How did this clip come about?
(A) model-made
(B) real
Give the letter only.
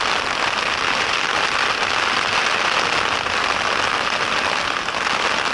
B